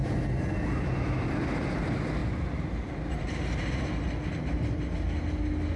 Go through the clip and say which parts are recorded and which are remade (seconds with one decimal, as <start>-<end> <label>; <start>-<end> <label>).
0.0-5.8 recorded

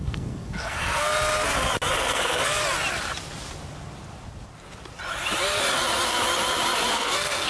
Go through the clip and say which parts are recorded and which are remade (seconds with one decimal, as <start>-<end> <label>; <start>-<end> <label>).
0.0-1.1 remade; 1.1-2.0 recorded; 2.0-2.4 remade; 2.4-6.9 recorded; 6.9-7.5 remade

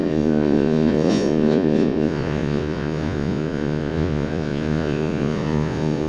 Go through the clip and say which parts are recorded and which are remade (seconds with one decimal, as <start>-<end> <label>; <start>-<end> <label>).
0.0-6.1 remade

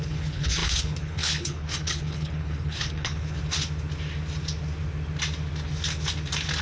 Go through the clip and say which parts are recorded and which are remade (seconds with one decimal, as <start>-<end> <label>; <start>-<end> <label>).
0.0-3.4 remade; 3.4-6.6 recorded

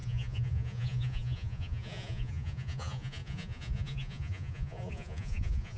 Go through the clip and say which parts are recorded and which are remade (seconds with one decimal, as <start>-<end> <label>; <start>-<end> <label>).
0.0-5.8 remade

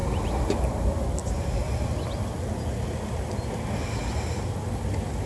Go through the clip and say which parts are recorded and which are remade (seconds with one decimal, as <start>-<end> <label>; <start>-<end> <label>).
0.0-0.6 remade; 0.6-5.3 recorded